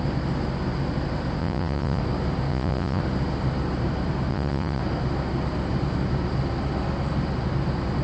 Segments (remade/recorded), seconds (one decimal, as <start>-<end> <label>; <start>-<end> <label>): 0.0-1.4 recorded; 1.4-2.0 remade; 2.0-2.5 recorded; 2.5-3.0 remade; 3.0-4.3 recorded; 4.3-4.8 remade; 4.8-8.0 recorded